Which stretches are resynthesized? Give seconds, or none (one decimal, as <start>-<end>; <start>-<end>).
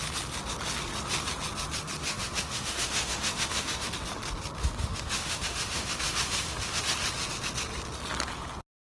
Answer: 2.0-3.9; 4.6-6.8